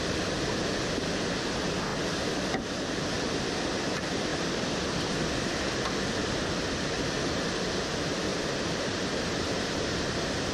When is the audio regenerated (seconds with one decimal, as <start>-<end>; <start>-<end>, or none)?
8.3-10.5